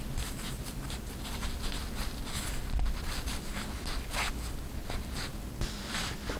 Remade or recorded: recorded